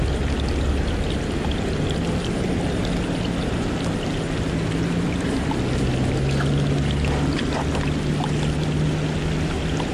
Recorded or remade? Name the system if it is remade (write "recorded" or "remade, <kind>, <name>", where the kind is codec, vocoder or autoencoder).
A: recorded